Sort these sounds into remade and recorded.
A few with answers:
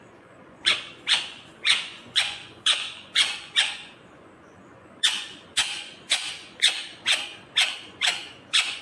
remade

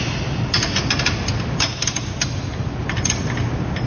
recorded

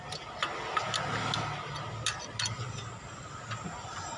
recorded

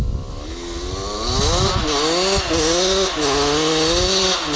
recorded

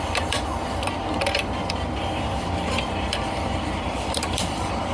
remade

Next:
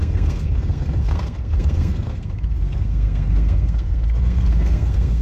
remade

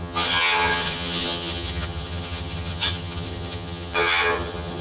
remade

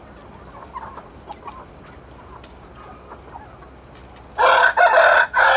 recorded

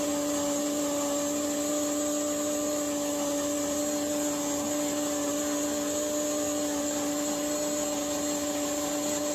recorded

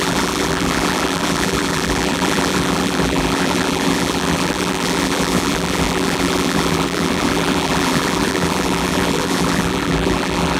remade